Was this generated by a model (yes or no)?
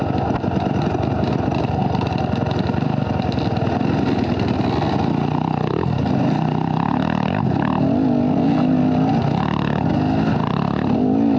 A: no